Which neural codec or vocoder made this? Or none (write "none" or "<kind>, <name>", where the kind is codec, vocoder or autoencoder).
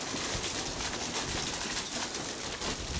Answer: none